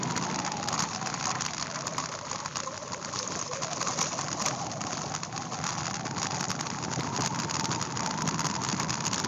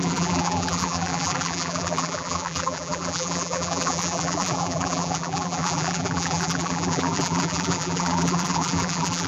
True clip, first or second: first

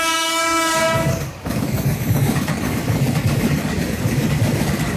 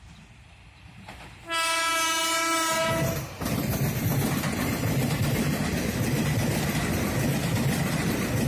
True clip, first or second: second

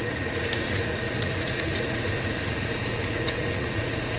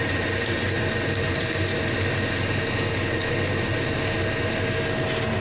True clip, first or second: second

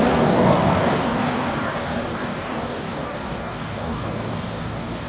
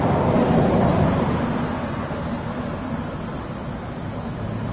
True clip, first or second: second